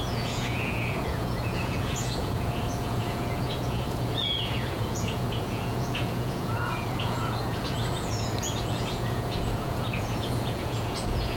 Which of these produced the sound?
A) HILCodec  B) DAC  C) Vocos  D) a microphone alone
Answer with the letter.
C